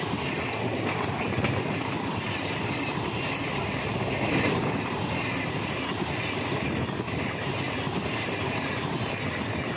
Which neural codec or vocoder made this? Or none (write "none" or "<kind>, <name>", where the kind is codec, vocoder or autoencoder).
vocoder, BigVGAN v2